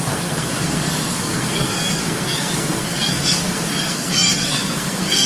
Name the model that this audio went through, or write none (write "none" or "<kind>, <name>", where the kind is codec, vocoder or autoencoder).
codec, SNAC